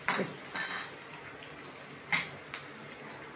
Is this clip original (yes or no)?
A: yes